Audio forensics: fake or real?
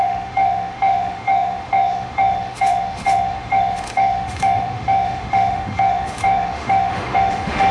fake